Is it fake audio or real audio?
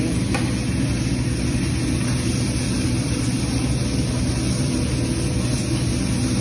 real